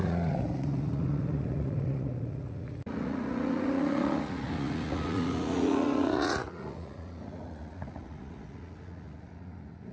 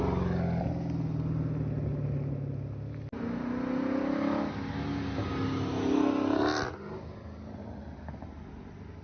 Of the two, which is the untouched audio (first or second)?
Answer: second